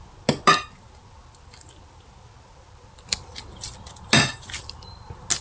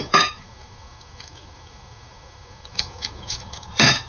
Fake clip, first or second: second